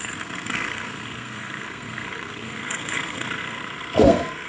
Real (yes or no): no